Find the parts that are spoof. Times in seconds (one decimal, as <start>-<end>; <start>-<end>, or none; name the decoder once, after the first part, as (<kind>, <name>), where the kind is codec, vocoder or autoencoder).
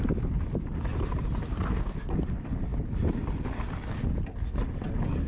none